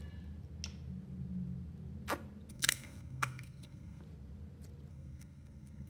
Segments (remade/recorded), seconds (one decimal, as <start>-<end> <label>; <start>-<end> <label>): 0.0-2.5 recorded; 2.5-4.0 remade; 4.0-4.9 recorded; 4.9-5.9 remade